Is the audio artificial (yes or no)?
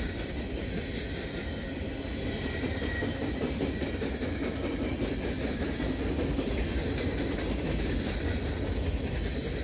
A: no